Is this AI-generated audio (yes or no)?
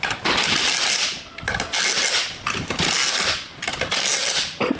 no